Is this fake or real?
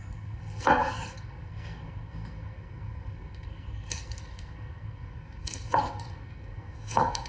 fake